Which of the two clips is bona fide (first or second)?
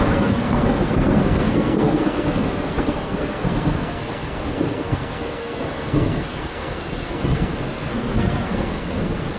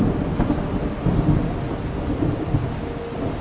second